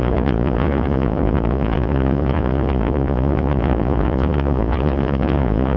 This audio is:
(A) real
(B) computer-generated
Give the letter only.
B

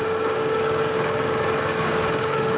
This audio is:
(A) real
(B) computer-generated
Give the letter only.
B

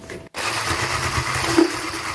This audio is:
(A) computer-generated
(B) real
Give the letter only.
B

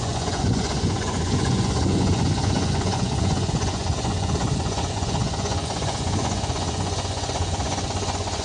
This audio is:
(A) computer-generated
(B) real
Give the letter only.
A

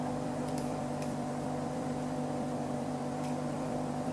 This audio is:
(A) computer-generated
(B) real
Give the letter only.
A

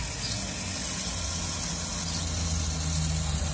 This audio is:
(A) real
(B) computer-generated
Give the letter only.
A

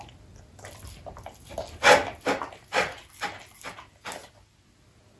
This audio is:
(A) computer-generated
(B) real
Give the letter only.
B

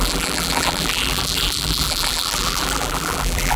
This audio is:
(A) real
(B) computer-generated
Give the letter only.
B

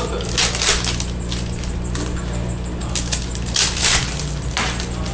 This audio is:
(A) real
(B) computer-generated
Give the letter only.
A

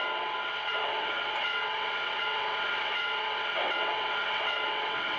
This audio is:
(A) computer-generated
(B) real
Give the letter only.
A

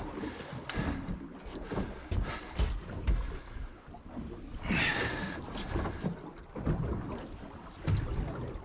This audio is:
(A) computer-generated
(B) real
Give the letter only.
B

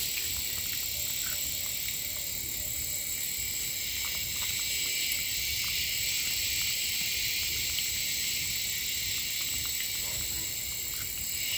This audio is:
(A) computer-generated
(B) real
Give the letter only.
B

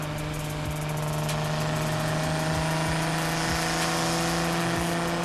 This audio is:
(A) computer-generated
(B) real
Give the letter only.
B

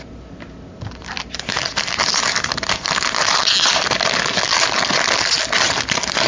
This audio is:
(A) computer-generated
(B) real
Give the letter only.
B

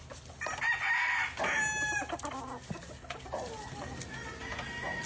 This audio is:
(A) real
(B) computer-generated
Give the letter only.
A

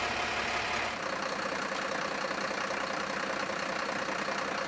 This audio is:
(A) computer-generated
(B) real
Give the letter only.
B